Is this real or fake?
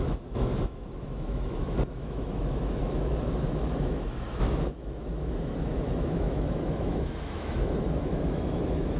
fake